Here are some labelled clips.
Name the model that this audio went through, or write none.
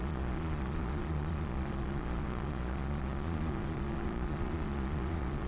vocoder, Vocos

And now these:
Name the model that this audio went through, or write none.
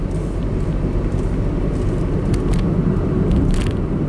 none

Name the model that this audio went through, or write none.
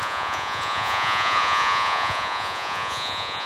vocoder, Vocos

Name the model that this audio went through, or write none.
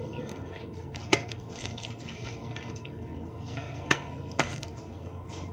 codec, SNAC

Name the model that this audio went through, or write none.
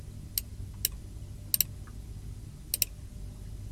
none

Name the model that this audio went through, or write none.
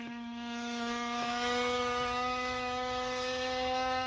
autoencoder, DAC-VAE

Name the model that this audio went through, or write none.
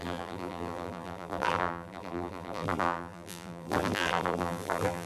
vocoder, BigVGAN v2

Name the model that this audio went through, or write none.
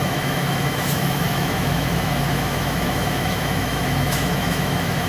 autoencoder, DAC-VAE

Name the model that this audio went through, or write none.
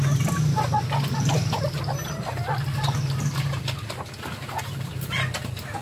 none